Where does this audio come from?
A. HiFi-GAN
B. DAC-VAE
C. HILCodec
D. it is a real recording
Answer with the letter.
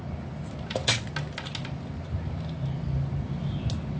D